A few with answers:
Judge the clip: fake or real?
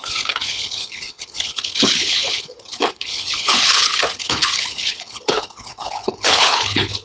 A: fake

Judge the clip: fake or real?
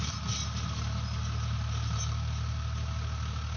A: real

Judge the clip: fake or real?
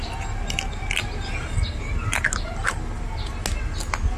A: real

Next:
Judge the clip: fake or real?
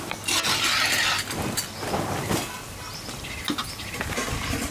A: real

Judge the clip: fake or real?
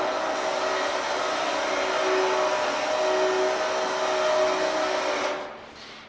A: real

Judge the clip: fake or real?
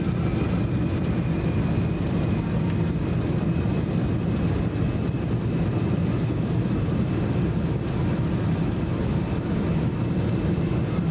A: real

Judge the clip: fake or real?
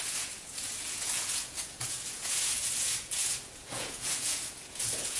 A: fake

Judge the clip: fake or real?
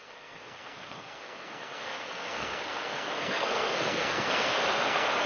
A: fake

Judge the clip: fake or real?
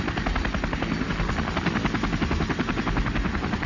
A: real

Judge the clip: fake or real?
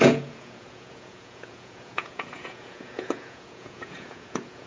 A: fake